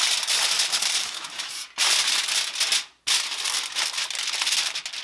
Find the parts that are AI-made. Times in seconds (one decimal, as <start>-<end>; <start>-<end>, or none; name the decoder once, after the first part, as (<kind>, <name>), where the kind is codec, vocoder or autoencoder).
1.0-1.5 (autoencoder, DAC-VAE)